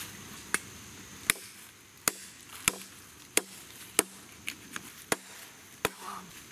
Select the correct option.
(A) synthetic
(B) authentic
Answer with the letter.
B